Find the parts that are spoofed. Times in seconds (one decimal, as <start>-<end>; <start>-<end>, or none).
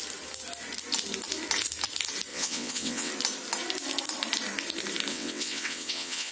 2.3-3.1; 5.1-6.3